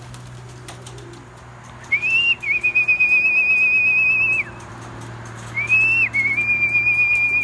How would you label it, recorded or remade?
recorded